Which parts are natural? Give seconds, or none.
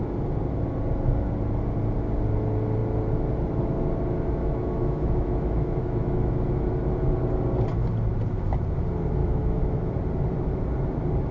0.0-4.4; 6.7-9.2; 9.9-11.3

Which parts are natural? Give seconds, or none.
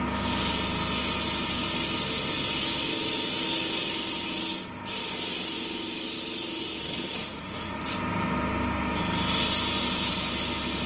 0.0-7.2; 7.9-10.9